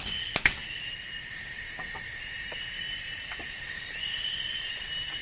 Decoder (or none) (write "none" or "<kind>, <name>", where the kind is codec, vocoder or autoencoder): vocoder, BigVGAN v2